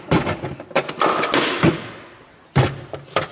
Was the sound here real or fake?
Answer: real